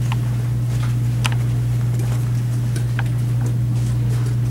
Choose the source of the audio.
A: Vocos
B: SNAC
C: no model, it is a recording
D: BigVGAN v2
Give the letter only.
C